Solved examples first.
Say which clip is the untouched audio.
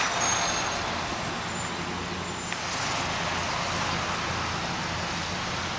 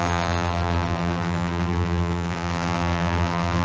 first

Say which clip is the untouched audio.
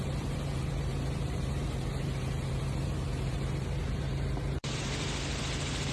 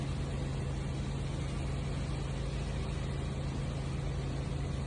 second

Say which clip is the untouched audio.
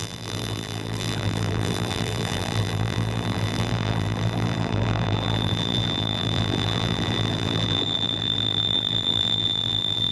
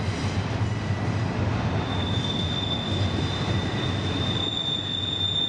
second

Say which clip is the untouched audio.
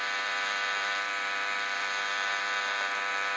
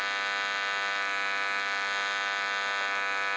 second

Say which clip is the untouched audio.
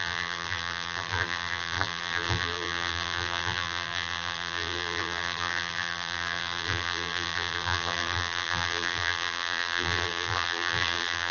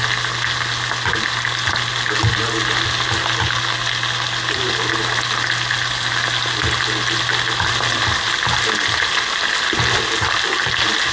second